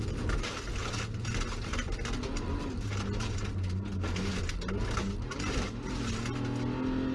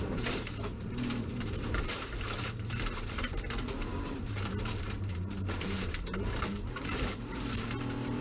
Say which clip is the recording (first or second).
first